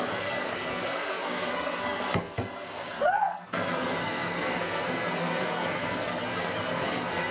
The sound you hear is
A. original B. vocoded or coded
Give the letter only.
B